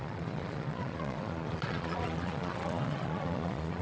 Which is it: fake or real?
fake